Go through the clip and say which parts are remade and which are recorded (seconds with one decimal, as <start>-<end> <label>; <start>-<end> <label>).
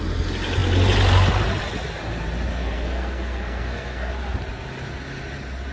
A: 0.0-2.5 recorded; 2.5-4.1 remade; 4.1-5.7 recorded